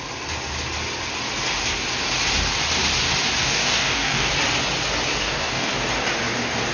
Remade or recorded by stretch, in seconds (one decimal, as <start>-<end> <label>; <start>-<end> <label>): 0.0-3.4 recorded; 3.4-4.3 remade; 4.3-5.2 recorded; 5.2-5.7 remade; 5.7-6.7 recorded